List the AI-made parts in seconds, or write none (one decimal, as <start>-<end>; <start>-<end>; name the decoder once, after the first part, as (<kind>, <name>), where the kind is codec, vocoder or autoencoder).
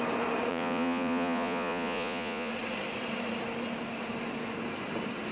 0.5-2.5 (vocoder, Vocos)